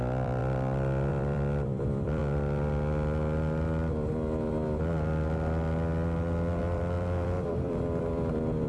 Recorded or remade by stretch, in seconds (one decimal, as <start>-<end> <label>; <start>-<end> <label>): 0.0-0.4 remade; 0.4-1.1 recorded; 1.1-2.2 remade; 2.2-6.6 recorded; 6.6-8.7 remade